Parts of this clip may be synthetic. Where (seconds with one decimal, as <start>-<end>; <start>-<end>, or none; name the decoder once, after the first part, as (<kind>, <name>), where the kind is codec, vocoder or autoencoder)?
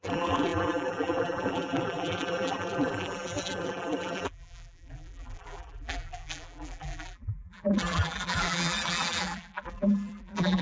0.0-10.6 (vocoder, BigVGAN v2)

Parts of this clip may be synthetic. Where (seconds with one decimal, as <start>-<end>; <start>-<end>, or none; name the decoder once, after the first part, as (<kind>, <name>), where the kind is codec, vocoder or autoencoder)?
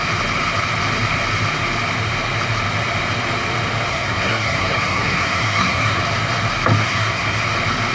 3.9-6.0 (codec, SNAC); 6.8-7.4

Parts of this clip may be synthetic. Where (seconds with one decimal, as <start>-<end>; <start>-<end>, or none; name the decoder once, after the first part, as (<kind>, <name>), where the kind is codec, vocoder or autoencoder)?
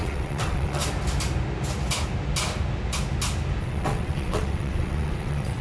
0.0-0.8 (vocoder, WaveNeXt); 3.6-5.6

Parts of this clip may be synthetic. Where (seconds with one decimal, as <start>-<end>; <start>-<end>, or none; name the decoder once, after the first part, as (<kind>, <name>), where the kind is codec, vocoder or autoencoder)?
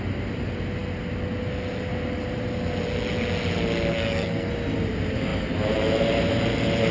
3.9-4.5 (codec, SNAC)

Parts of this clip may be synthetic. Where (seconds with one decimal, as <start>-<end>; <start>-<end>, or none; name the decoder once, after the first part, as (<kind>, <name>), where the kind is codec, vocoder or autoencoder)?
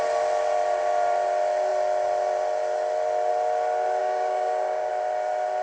4.0-4.9 (codec, DAC)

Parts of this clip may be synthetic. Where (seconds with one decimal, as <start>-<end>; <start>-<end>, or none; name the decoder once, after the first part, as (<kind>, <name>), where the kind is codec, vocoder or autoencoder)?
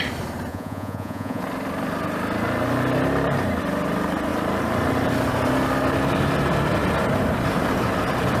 0.5-1.4 (vocoder, Vocos)